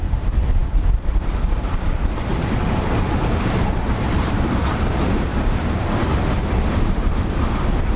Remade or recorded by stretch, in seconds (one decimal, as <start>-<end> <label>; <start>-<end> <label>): 0.0-2.3 recorded; 2.3-7.1 remade; 7.1-8.0 recorded